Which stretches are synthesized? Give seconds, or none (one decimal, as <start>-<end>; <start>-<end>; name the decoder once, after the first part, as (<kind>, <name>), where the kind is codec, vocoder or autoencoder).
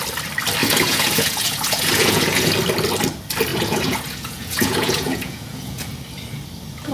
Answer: 0.6-2.5 (vocoder, Vocos); 3.5-5.9